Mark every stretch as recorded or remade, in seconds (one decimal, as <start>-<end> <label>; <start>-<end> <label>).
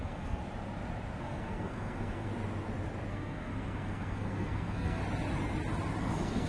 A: 0.0-0.4 remade; 0.4-1.2 recorded; 1.2-2.3 remade; 2.3-3.1 recorded; 3.1-5.0 remade; 5.0-6.0 recorded; 6.0-6.5 remade